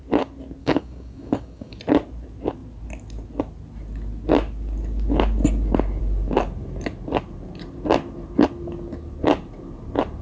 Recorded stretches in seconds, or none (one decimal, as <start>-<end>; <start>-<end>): 0.0-0.6; 1.8-10.2